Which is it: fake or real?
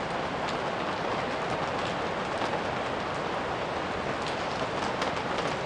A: real